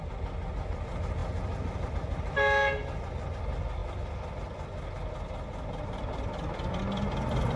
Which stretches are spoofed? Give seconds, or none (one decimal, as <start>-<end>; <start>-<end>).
none